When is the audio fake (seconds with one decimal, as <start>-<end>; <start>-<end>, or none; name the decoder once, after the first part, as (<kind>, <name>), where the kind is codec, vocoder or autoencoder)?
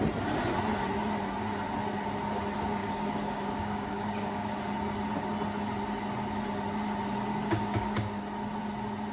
2.8-4.5 (codec, DAC); 7.3-8.2